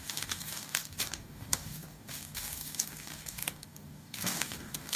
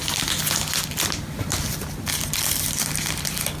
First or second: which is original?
second